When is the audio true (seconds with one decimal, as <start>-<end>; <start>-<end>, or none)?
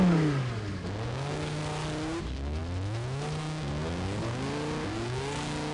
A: 1.6-2.2; 2.6-3.4